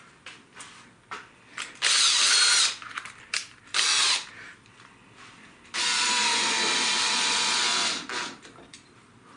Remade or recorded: remade